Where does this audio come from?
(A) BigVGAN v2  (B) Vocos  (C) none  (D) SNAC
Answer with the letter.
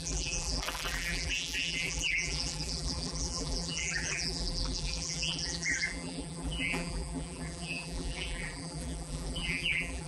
A